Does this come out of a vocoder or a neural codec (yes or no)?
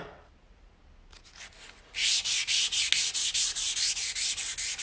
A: no